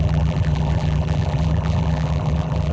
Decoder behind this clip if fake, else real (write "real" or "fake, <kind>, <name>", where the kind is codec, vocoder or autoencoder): fake, vocoder, BigVGAN v2